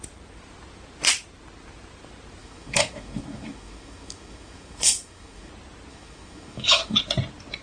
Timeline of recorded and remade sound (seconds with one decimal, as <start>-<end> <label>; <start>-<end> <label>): 0.0-2.4 recorded; 2.4-5.5 remade; 5.5-5.9 recorded; 5.9-7.0 remade; 7.0-7.6 recorded